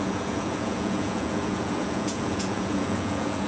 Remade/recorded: remade